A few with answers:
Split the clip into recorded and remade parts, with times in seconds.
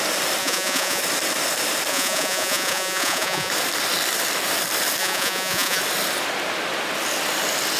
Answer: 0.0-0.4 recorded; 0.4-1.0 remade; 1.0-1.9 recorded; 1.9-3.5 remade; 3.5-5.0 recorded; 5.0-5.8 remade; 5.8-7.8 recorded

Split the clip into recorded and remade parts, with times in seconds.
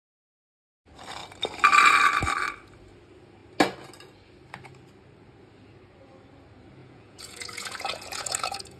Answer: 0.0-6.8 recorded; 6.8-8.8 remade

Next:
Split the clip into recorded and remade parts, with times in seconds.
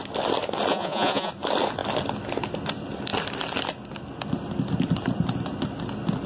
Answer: 0.0-0.7 recorded; 0.7-1.3 remade; 1.3-6.3 recorded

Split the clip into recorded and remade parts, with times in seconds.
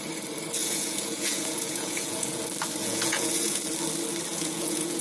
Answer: 0.0-0.6 recorded; 0.6-2.4 remade; 2.4-2.8 recorded; 2.8-3.6 remade; 3.6-4.3 recorded; 4.3-5.0 remade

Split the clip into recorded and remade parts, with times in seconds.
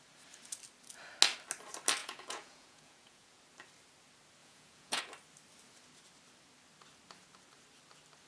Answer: 0.0-2.0 recorded; 2.0-3.4 remade; 3.4-4.4 recorded; 4.4-5.0 remade; 5.0-8.3 recorded